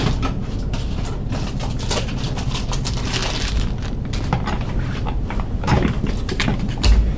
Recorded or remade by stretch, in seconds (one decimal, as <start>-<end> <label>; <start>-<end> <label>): 0.0-3.2 remade; 3.2-6.6 recorded; 6.6-7.2 remade